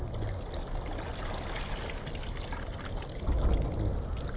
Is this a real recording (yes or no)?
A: yes